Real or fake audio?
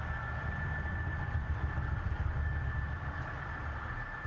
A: real